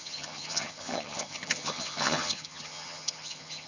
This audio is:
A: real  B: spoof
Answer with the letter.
B